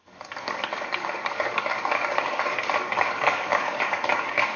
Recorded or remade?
remade